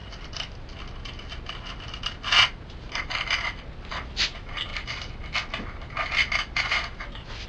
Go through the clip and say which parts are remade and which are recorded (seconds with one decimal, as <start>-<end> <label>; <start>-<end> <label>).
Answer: 0.0-7.5 recorded